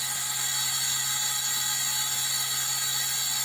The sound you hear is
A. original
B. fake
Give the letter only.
A